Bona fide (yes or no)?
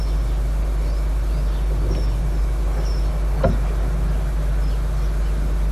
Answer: yes